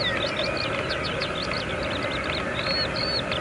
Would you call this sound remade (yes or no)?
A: no